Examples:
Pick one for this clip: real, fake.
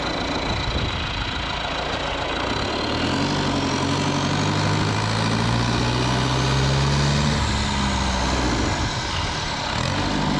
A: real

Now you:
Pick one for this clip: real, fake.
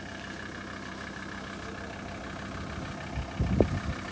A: real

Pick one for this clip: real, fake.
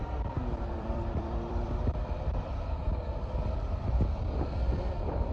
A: fake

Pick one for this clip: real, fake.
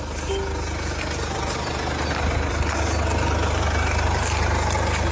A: real